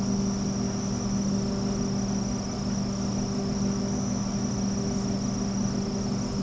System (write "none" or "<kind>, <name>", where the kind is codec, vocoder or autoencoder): none